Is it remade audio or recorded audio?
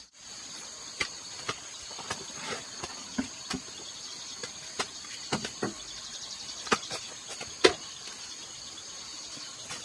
recorded